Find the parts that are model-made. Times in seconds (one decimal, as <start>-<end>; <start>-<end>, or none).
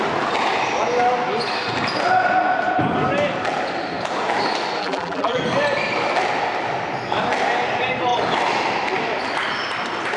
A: 4.8-5.4